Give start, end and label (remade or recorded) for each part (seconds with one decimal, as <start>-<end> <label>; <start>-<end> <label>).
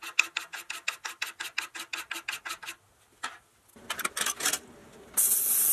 0.0-5.7 recorded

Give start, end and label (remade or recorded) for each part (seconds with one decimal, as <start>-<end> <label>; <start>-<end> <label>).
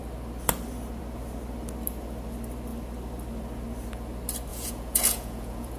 0.0-4.5 recorded; 4.5-5.8 remade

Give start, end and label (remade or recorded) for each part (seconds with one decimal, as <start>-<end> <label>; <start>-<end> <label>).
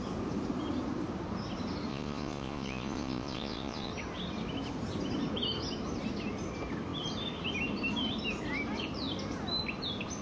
0.0-1.9 recorded; 1.9-3.9 remade; 3.9-10.2 recorded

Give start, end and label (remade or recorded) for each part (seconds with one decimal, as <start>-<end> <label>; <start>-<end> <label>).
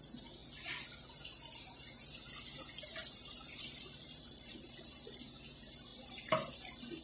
0.0-3.0 recorded; 3.0-5.2 remade; 5.2-5.9 recorded; 5.9-7.0 remade